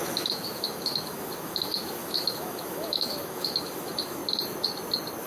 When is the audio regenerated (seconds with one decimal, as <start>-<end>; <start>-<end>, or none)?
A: 0.0-4.2